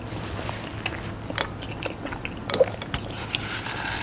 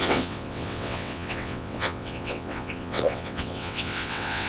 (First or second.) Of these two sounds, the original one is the first